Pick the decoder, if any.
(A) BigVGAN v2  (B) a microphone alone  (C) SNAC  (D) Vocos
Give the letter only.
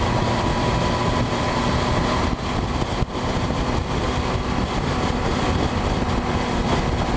B